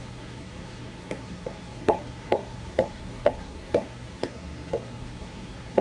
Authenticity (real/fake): fake